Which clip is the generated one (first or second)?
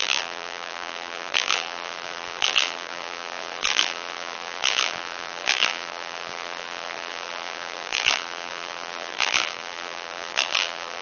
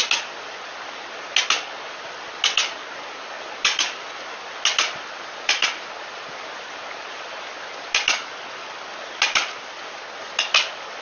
first